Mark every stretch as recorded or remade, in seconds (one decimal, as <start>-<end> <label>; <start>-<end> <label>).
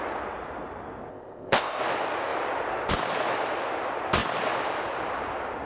0.0-1.1 recorded; 1.1-1.8 remade; 1.8-5.7 recorded